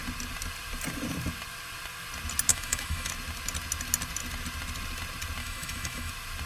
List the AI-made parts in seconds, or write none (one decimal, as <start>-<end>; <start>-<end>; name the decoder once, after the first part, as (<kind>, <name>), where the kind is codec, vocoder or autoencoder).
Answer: 2.5-3.1 (autoencoder, DAC-VAE); 5.4-6.1